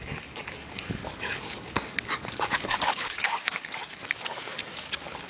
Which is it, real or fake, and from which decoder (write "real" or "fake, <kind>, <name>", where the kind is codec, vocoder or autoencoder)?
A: fake, codec, DAC